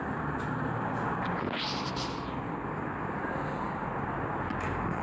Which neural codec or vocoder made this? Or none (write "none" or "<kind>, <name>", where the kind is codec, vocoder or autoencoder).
none